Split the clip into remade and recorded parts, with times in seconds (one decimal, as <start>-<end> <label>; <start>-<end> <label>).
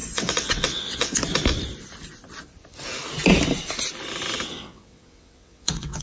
0.0-1.2 remade; 1.2-4.5 recorded; 4.5-6.0 remade